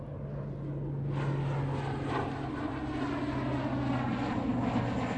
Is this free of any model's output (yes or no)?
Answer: yes